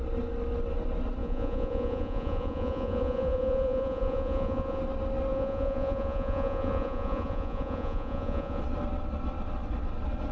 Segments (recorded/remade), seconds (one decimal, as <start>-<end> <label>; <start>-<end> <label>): 0.0-1.2 recorded; 1.2-4.8 remade; 4.8-5.3 recorded; 5.3-8.6 remade; 8.6-10.3 recorded